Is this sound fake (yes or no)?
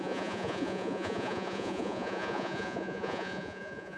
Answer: yes